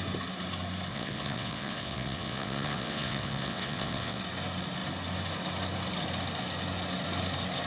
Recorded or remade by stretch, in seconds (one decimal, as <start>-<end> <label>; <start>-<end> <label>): 0.0-0.9 recorded; 0.9-4.2 remade; 4.2-7.7 recorded